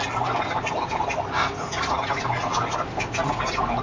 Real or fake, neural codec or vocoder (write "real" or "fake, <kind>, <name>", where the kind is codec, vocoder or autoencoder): real